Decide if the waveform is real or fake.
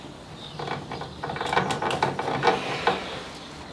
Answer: real